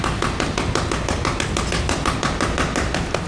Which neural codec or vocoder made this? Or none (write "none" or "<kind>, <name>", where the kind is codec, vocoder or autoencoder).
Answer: none